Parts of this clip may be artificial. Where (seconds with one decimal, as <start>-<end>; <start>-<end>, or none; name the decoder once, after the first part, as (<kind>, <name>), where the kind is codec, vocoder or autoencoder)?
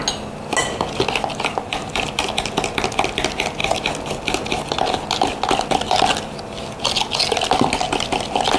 none